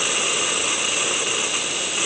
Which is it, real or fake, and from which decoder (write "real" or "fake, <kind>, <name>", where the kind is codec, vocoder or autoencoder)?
real